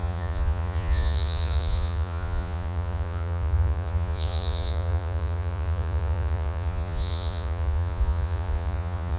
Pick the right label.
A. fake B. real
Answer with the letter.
A